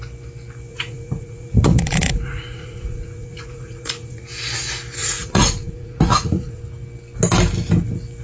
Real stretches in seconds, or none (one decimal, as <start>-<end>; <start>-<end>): 0.0-0.7; 4.2-5.0; 6.6-8.2